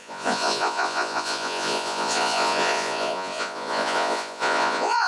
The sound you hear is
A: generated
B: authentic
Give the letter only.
A